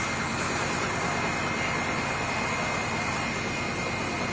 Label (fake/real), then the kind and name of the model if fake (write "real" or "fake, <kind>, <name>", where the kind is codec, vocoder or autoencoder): real